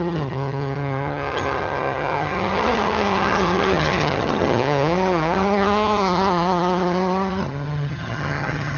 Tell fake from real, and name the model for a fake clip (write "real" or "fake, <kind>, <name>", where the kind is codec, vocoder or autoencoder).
fake, vocoder, HiFi-GAN